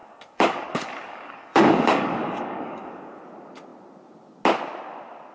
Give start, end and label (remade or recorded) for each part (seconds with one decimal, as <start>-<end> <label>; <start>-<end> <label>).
0.0-3.2 remade; 3.2-5.3 recorded